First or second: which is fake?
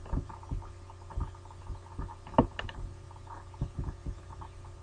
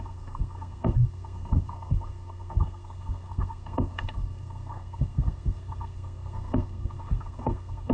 second